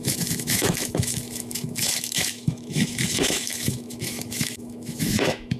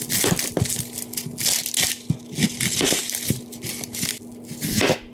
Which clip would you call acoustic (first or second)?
second